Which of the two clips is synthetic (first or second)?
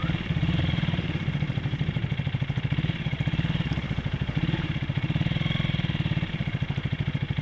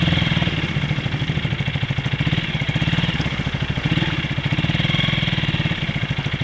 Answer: first